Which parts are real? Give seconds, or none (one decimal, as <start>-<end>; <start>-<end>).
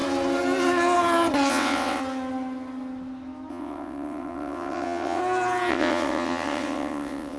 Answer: 0.0-1.5; 2.0-3.5; 5.2-5.7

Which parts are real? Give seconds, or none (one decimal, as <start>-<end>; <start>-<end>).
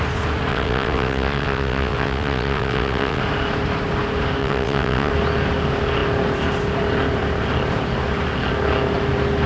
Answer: 0.0-0.5; 3.2-4.4; 5.1-9.5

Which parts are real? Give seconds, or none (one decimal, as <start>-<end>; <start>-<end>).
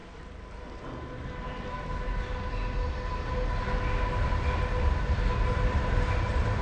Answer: 0.0-6.6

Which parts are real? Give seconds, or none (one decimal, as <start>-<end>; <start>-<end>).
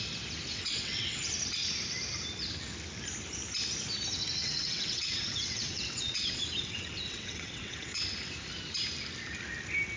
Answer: 0.0-0.5; 1.3-4.4; 8.0-10.0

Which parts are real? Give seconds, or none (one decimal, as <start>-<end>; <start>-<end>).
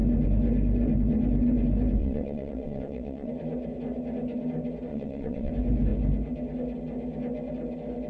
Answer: 0.0-2.0; 3.3-4.9; 5.5-8.1